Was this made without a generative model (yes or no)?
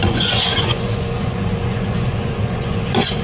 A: no